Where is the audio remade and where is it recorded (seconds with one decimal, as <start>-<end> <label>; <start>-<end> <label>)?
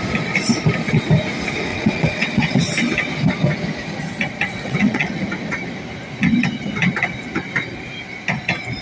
0.0-1.7 recorded; 1.7-2.6 remade; 2.6-4.5 recorded; 4.5-5.2 remade; 5.2-8.8 recorded